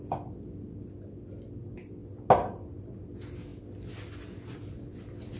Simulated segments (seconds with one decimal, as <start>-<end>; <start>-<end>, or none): none